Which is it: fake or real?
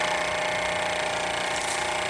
real